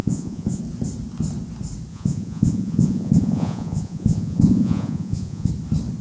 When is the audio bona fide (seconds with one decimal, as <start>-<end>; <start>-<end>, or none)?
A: 0.6-1.9; 5.5-6.0